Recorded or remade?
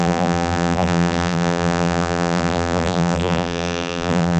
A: remade